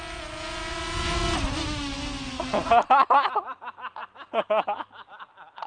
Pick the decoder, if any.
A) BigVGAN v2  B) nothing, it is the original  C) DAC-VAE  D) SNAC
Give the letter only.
B